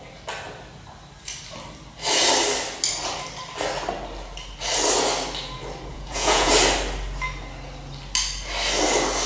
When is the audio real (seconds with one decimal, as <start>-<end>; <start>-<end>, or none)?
0.0-5.9; 6.5-9.3